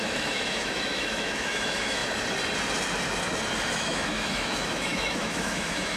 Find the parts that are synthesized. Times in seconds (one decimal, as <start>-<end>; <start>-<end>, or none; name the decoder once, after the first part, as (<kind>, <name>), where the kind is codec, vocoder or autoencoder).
0.0-2.0 (autoencoder, DAC-VAE); 3.7-6.0